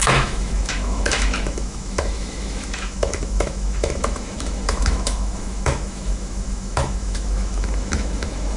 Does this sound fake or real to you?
fake